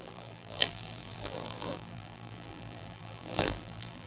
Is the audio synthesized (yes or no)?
yes